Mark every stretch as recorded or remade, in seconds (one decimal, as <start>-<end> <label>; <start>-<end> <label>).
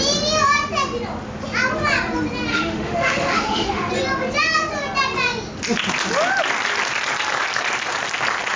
0.0-2.5 recorded; 2.5-3.9 remade; 3.9-8.6 recorded